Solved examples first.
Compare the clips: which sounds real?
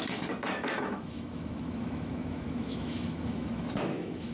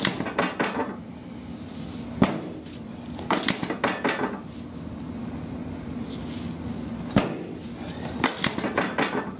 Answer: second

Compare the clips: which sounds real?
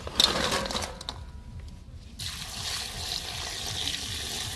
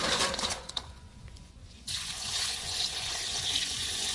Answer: first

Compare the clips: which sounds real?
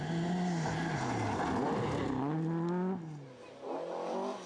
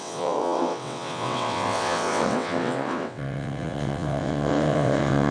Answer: first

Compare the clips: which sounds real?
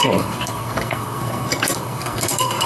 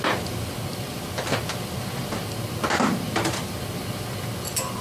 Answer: second